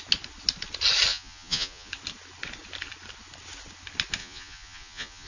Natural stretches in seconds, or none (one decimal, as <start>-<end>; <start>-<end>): 0.0-1.1; 1.9-4.2